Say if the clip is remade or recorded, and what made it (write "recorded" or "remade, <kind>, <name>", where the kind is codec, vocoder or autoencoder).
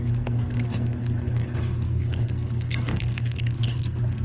remade, codec, SNAC